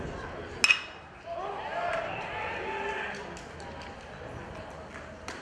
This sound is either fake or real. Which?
real